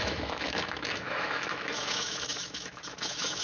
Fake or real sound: fake